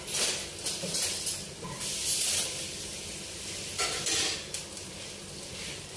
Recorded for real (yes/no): yes